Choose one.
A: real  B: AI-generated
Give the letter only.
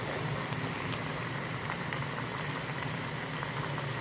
A